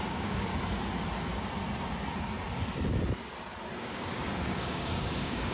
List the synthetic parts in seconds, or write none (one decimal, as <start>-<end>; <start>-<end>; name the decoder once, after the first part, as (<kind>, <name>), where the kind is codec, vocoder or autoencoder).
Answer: 0.0-0.5 (codec, DAC); 3.8-5.5